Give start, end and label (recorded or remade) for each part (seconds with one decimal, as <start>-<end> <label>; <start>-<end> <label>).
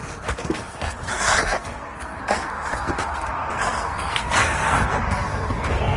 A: 0.0-6.0 remade